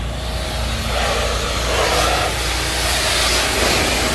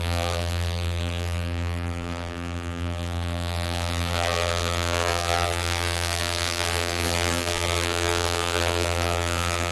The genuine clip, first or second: first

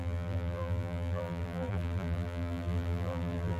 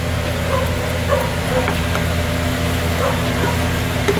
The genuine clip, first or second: second